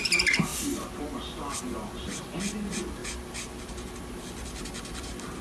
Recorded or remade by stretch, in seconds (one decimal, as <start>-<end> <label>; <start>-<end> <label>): 0.0-5.4 recorded